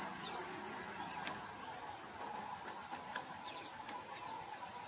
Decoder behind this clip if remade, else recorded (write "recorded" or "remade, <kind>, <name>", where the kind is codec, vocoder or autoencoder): recorded